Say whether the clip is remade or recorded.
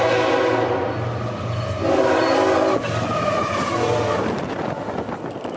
recorded